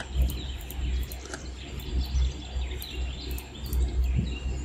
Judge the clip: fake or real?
real